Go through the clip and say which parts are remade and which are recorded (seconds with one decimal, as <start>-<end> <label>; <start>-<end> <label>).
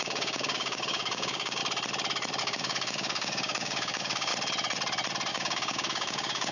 0.0-1.6 remade; 1.6-2.4 recorded; 2.4-4.3 remade; 4.3-5.3 recorded; 5.3-6.5 remade